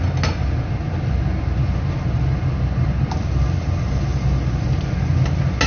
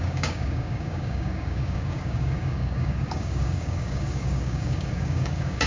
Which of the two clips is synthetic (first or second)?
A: second